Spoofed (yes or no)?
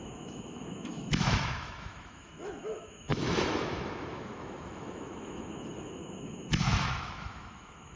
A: yes